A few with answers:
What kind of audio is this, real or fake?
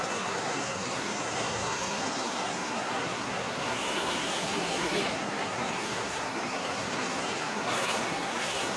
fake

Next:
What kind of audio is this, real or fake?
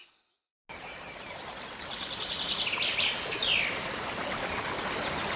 real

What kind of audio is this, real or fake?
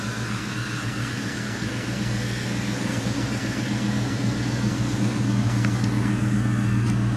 fake